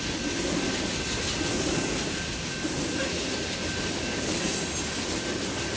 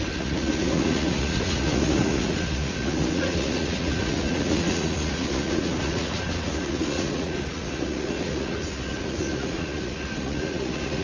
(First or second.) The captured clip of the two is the first